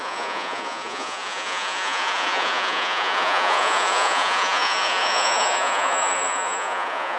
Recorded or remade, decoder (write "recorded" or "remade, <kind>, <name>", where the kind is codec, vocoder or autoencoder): remade, vocoder, Vocos